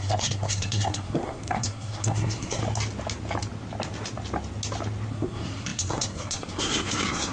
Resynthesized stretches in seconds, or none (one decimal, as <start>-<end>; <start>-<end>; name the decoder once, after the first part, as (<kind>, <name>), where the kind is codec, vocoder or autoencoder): 0.0-2.6 (codec, SNAC); 5.1-7.3